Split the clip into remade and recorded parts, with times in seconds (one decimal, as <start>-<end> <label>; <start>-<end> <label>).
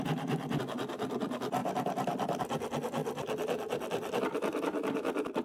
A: 0.0-1.6 recorded; 1.6-2.4 remade; 2.4-3.0 recorded; 3.0-4.2 remade; 4.2-5.4 recorded